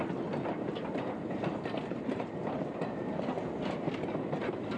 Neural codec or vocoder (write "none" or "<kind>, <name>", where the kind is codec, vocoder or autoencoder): none